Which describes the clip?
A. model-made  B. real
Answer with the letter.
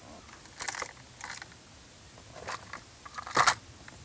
B